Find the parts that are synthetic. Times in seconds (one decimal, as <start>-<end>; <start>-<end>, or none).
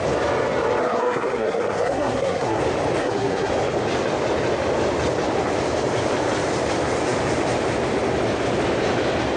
0.8-2.6; 3.0-3.5